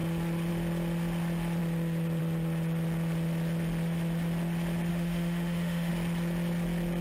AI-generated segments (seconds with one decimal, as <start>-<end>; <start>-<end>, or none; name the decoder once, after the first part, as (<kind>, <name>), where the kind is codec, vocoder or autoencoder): 4.9-5.9 (autoencoder, DAC-VAE)